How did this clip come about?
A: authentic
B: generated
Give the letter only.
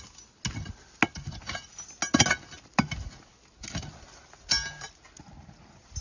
A